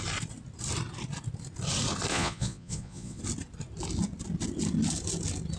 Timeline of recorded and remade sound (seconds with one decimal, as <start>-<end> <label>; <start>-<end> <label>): 0.0-2.1 recorded; 2.1-3.2 remade; 3.2-5.6 recorded